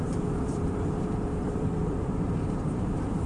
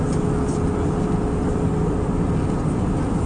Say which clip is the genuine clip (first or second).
second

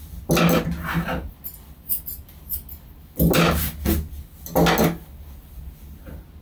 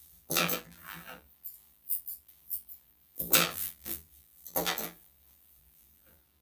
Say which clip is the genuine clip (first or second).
first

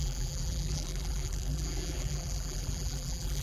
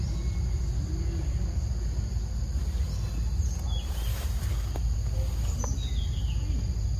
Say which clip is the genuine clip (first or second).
second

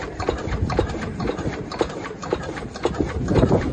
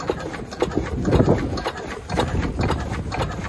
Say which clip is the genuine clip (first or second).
second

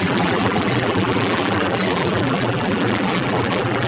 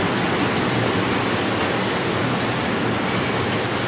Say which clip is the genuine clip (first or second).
second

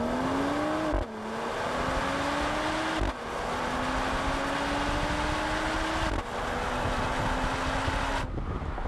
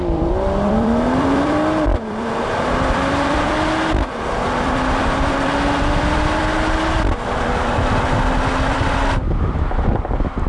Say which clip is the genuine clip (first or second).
first